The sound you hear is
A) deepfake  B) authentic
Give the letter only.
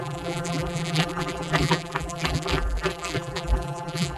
A